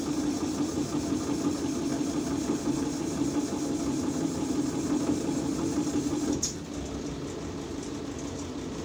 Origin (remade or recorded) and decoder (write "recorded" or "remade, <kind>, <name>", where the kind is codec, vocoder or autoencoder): recorded